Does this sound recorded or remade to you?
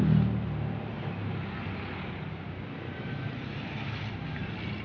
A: recorded